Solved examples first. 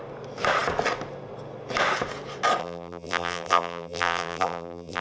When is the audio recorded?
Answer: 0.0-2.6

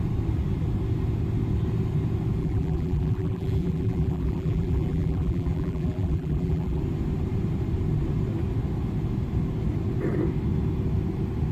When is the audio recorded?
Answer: 0.0-2.4; 6.8-11.5

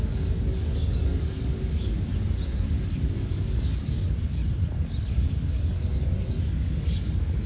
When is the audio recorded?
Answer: 2.1-2.7; 4.4-5.1

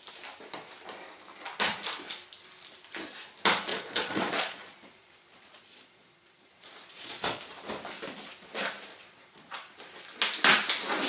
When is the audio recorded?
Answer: 0.0-3.7; 7.4-8.9; 9.7-11.1

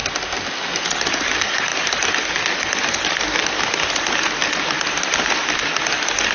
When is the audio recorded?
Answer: 0.0-6.3

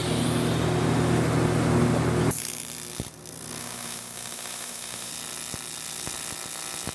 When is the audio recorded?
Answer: 0.0-3.6; 5.1-6.9